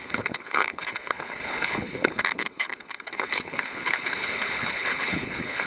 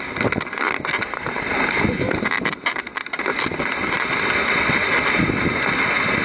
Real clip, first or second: second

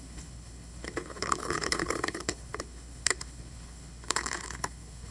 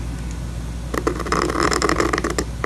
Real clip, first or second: second